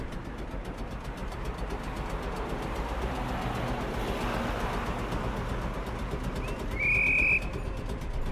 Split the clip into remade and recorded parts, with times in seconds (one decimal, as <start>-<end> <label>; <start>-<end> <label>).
0.0-1.2 recorded; 1.2-1.7 remade; 1.7-8.3 recorded